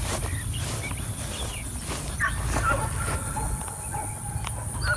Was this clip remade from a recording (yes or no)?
no